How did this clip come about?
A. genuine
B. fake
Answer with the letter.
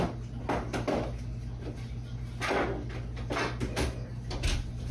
A